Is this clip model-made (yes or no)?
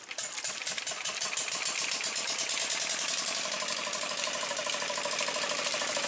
no